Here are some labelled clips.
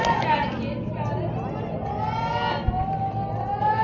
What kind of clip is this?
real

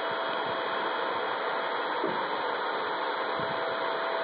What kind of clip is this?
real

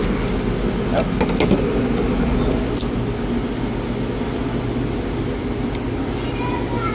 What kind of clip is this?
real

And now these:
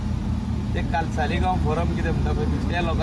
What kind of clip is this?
real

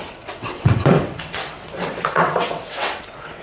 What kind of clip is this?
fake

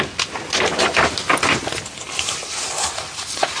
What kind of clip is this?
real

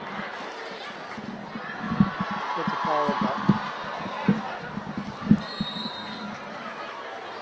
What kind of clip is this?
real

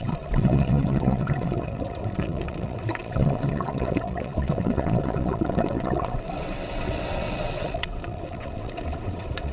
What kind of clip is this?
fake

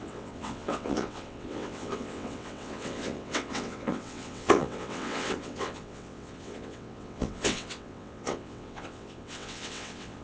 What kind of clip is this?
fake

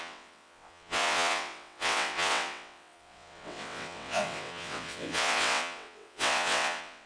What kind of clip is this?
fake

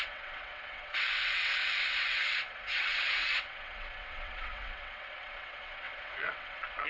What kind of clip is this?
fake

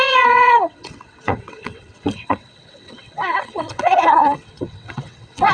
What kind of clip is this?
fake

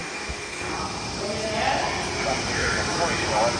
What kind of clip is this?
real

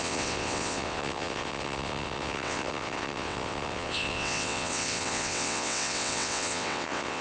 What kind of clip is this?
fake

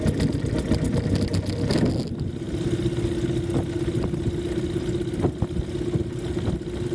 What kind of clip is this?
real